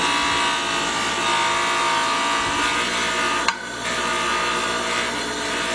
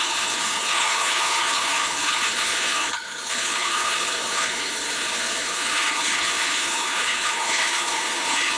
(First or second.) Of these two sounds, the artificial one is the second